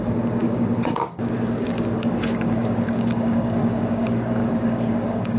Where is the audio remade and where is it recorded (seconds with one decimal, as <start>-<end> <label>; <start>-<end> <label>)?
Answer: 0.0-5.4 remade